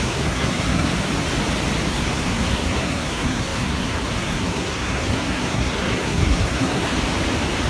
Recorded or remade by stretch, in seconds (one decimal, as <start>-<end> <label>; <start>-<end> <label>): 0.0-0.9 remade; 0.9-1.9 recorded; 1.9-6.9 remade; 6.9-7.7 recorded